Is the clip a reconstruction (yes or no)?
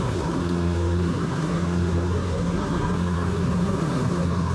yes